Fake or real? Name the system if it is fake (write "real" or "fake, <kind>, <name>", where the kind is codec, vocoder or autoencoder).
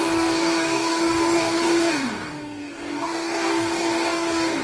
fake, codec, DAC